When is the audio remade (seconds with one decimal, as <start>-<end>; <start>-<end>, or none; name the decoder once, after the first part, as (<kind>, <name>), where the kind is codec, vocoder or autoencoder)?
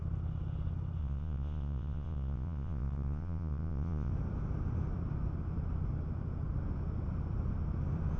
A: 1.0-4.1 (vocoder, Vocos)